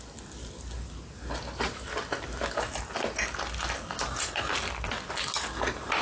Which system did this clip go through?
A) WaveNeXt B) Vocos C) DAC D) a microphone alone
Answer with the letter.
D